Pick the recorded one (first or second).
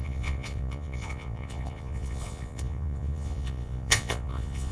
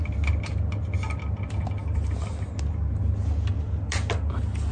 second